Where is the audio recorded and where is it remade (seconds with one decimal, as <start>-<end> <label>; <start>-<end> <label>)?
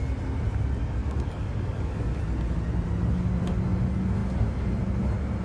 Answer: 0.0-1.0 recorded; 1.0-2.2 remade; 2.2-5.4 recorded